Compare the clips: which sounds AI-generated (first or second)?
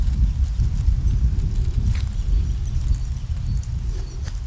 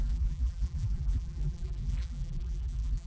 second